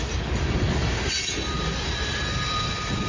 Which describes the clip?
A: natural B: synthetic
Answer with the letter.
A